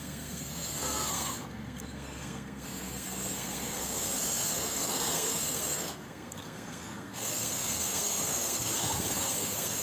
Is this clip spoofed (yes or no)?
yes